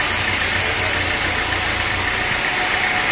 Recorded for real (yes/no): yes